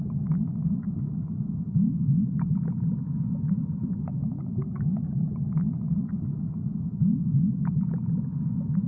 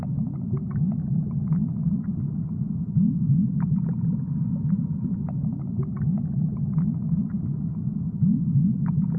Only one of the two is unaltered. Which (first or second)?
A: second